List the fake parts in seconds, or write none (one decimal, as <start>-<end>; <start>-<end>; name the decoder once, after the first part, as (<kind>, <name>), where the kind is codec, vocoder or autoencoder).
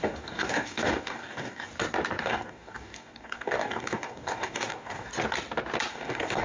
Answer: 0.0-1.7 (codec, DAC); 2.2-5.1; 5.9-6.4